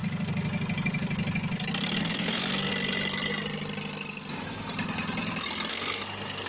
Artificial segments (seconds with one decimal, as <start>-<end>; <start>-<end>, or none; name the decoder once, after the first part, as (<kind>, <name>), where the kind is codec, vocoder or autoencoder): 2.0-2.7 (codec, SNAC); 5.7-6.5